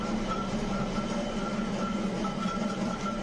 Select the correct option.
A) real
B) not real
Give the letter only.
B